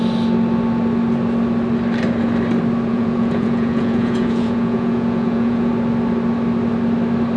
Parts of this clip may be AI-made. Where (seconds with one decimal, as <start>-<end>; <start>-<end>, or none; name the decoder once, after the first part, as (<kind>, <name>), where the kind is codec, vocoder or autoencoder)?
2.9-5.7 (vocoder, Vocos)